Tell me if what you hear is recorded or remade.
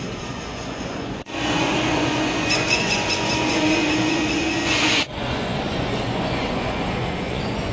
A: remade